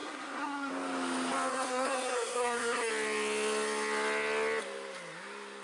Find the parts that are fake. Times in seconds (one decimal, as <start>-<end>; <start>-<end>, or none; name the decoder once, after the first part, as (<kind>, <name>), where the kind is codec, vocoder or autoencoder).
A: 0.0-0.7 (codec, SNAC); 1.5-2.9